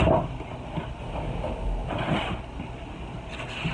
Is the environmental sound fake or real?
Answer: real